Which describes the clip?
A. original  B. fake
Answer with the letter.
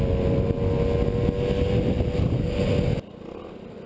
A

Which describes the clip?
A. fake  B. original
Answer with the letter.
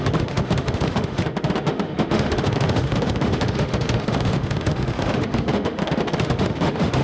A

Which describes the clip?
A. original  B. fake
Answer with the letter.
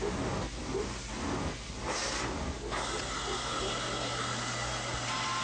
A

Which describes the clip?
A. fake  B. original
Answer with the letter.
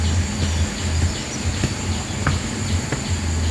B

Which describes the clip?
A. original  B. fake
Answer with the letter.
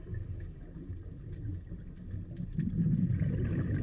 A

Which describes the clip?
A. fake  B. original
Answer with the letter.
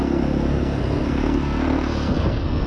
A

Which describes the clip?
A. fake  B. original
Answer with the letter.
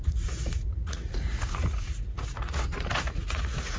A